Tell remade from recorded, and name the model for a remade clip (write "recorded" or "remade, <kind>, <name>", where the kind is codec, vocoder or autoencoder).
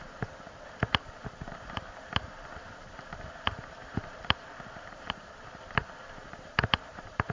remade, vocoder, BigVGAN v2